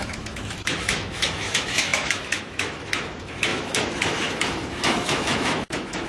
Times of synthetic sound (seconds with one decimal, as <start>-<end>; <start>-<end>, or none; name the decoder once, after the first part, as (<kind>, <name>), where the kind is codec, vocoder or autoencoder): 0.0-6.1 (autoencoder, DAC-VAE)